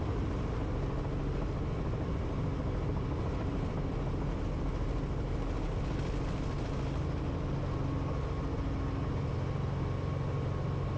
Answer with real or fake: real